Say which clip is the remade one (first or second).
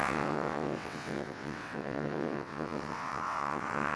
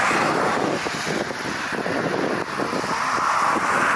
first